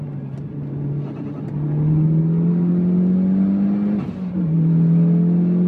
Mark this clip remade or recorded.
recorded